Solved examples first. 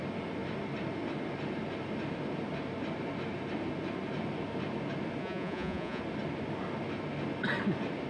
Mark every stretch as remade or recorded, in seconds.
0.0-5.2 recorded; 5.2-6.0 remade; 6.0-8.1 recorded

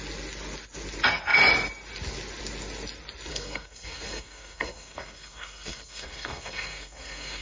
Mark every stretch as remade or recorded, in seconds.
0.0-3.3 recorded; 3.3-7.4 remade

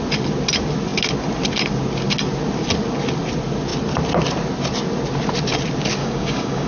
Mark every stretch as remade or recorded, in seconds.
0.0-6.0 recorded; 6.0-6.7 remade

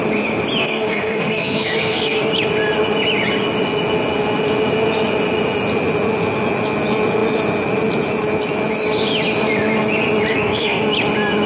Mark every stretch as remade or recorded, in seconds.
0.0-0.6 recorded; 0.6-2.3 remade; 2.3-10.3 recorded; 10.3-10.8 remade; 10.8-11.5 recorded